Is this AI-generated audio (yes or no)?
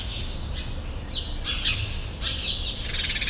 no